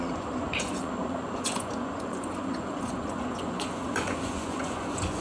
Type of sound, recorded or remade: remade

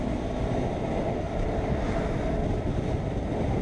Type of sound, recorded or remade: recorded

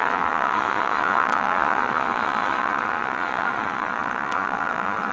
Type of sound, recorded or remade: remade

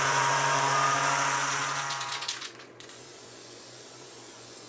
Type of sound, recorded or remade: remade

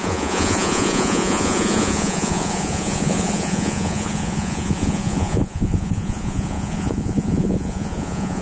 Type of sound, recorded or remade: remade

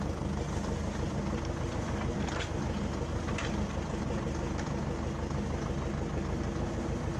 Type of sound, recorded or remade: recorded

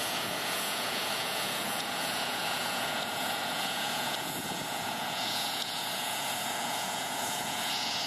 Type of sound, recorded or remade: remade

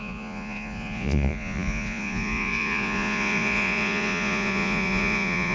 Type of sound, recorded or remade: remade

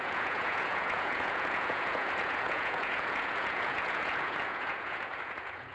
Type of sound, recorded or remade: remade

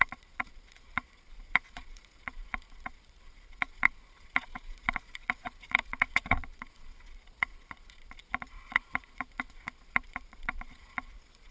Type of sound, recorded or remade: remade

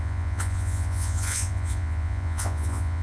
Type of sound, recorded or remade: remade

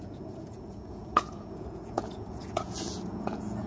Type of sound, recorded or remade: remade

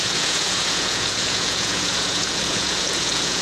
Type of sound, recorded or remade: remade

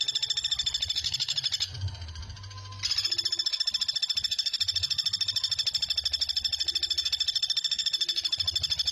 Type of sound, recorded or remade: recorded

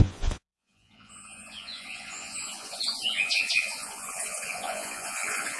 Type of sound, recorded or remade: remade